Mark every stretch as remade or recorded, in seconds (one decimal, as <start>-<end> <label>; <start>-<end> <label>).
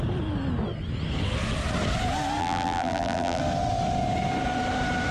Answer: 0.0-2.4 recorded; 2.4-3.4 remade; 3.4-5.1 recorded